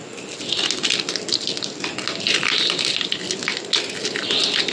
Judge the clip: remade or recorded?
recorded